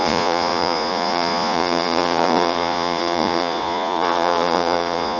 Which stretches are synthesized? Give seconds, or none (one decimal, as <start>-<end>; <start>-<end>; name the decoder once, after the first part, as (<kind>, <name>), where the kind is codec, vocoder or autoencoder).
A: 0.0-5.2 (vocoder, Vocos)